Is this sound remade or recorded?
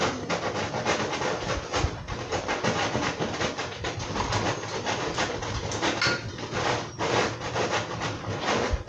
recorded